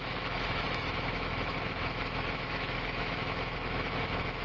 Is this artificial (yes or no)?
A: yes